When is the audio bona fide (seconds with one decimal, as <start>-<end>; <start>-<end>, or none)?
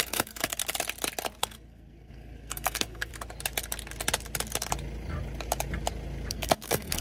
0.6-1.4; 3.1-6.3